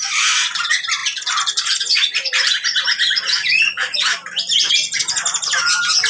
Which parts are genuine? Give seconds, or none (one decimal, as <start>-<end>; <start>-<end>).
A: 0.0-6.1